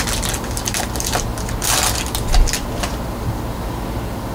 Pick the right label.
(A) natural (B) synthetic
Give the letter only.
A